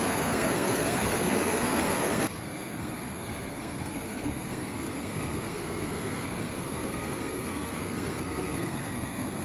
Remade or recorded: remade